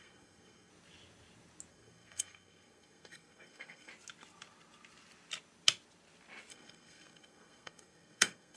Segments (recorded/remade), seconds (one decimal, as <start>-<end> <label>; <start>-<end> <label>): 0.0-0.7 remade; 0.7-1.7 recorded; 1.7-3.9 remade; 3.9-6.5 recorded; 6.5-8.6 remade